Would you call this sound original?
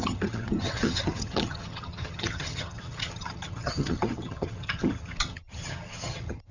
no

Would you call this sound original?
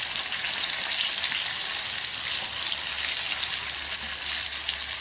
yes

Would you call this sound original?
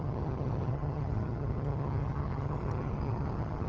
no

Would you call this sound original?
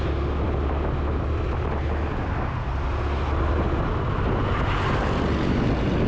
yes